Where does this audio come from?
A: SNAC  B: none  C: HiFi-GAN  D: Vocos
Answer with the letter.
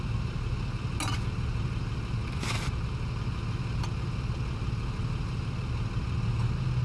B